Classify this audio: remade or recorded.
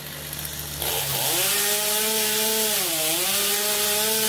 recorded